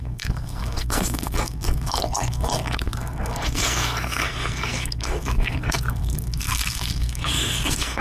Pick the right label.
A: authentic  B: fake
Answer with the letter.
B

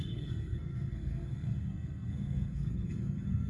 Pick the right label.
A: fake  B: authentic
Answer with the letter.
A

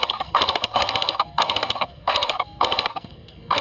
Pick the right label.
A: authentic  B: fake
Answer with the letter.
B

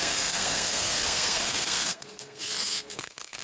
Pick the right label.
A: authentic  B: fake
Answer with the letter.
B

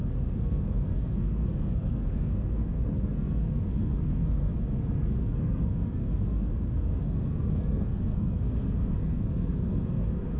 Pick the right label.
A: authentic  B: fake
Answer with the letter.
B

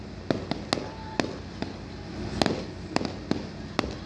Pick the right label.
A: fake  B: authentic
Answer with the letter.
B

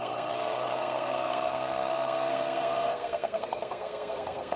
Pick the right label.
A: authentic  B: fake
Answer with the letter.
B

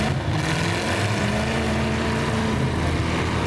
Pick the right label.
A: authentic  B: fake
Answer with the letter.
A